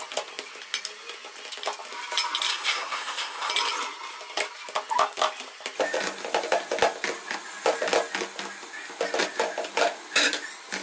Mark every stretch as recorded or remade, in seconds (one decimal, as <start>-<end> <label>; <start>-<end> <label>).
0.0-2.5 recorded; 2.5-3.5 remade; 3.5-10.8 recorded